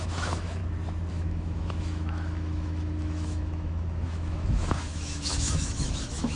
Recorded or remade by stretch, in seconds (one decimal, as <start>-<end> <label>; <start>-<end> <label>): 0.0-0.6 remade; 0.6-1.1 recorded; 1.1-6.4 remade